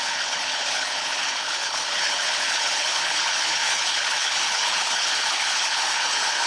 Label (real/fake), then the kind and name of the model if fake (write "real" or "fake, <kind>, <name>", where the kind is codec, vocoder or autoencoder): fake, codec, HILCodec